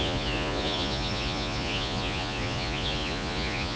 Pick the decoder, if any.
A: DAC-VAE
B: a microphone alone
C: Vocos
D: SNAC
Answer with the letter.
C